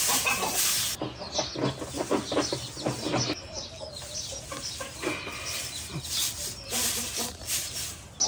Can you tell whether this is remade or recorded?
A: recorded